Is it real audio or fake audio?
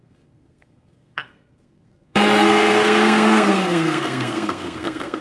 fake